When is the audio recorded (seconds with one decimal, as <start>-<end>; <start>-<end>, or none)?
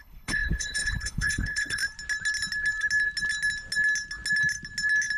1.8-5.2